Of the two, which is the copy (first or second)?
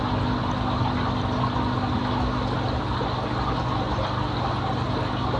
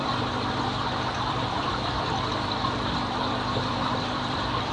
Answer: second